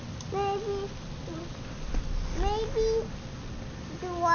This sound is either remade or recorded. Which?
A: recorded